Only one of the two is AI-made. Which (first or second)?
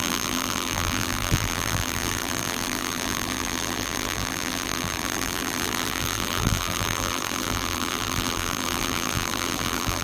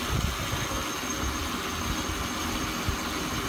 first